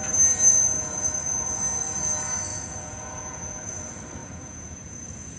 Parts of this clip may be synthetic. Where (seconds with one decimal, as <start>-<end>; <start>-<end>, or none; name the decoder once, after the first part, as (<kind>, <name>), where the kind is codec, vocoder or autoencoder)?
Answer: 0.5-1.6 (vocoder, Vocos); 2.5-3.8; 4.2-5.4